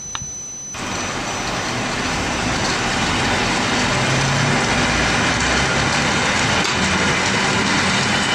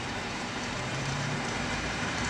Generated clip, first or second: second